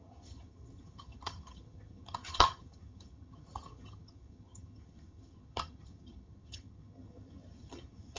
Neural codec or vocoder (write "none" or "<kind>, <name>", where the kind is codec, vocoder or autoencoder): vocoder, HiFi-GAN